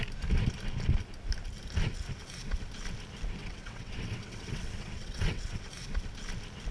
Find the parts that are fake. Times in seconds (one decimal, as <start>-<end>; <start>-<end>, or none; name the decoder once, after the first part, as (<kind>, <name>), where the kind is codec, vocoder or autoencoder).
3.4-5.7 (vocoder, WaveNeXt)